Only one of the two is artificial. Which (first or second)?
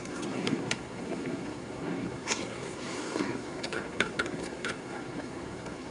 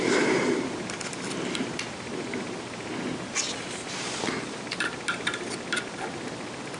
first